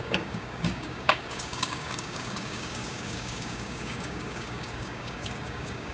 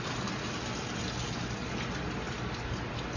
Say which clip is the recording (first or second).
second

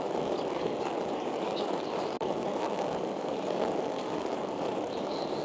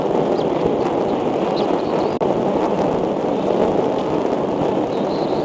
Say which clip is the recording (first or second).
second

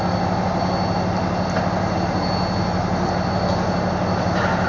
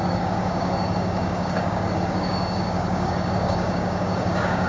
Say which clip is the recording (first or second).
first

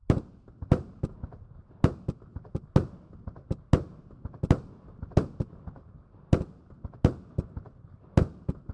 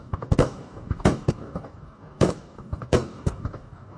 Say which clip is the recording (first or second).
first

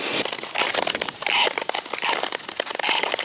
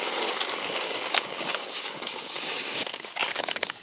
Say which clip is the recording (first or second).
first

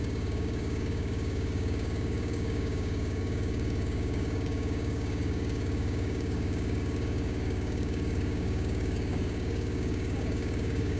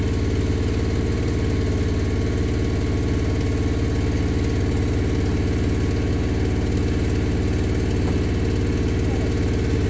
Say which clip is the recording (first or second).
second